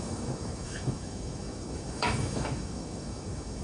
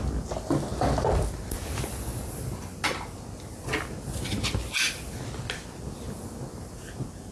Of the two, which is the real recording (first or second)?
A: second